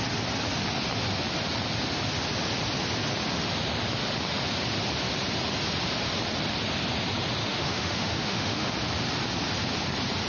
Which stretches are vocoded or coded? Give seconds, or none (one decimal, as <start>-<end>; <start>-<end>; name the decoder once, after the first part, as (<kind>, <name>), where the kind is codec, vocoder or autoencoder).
7.4-8.7 (autoencoder, DAC-VAE)